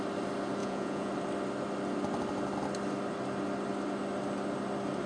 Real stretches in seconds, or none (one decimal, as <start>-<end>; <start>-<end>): 0.0-0.6; 1.1-5.1